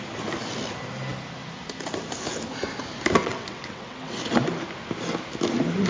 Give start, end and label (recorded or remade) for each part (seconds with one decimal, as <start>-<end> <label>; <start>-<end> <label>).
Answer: 0.0-3.2 recorded; 3.2-4.2 remade; 4.2-5.9 recorded